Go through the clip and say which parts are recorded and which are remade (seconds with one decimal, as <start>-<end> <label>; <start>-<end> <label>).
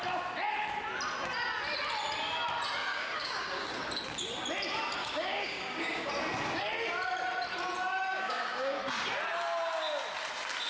0.0-2.9 recorded; 2.9-3.8 remade; 3.8-5.0 recorded; 5.0-6.1 remade; 6.1-8.1 recorded; 8.1-8.8 remade; 8.8-10.7 recorded